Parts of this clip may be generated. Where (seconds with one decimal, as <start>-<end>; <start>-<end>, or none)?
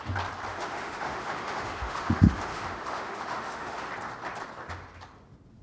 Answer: 0.5-3.9